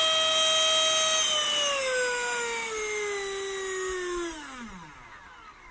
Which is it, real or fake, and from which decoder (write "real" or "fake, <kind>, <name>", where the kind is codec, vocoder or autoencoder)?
real